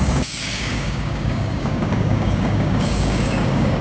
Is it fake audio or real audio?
fake